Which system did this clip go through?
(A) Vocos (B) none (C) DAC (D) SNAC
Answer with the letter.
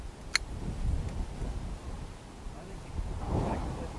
B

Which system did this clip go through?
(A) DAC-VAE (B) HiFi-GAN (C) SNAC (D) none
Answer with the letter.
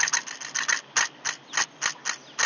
D